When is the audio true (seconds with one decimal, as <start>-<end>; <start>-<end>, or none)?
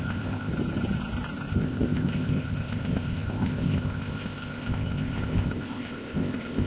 0.5-1.5